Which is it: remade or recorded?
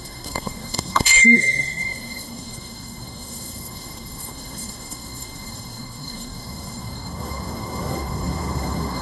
remade